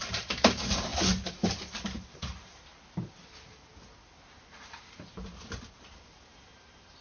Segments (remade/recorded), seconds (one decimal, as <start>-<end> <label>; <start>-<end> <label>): 0.0-2.7 remade; 2.7-4.4 recorded; 4.4-7.0 remade